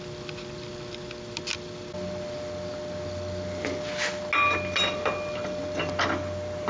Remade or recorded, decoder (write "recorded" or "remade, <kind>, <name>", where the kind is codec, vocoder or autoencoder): recorded